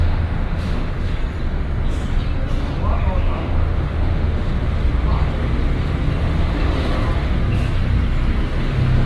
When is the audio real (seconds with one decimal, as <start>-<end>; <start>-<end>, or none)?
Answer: 1.2-3.2; 4.8-8.6